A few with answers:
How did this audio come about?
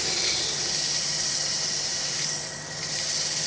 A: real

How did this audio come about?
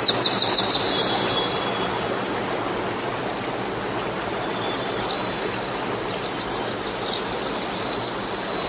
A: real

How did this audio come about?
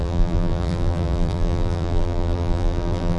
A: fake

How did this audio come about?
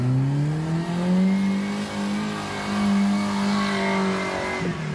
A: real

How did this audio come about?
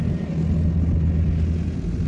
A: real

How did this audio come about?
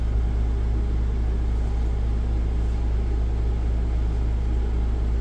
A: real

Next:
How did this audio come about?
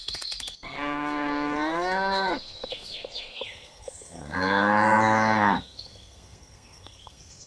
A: fake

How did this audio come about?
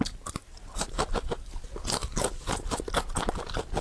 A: real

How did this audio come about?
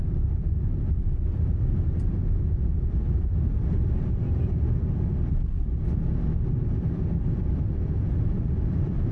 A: fake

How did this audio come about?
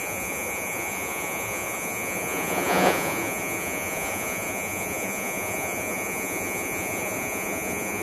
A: fake